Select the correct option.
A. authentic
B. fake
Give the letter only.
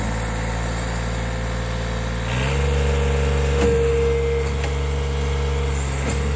A